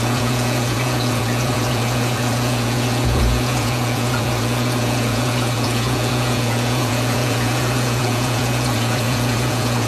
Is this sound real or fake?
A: fake